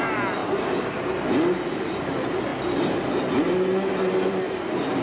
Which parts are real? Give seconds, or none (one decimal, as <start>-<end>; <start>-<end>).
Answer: 0.0-0.4; 0.9-2.5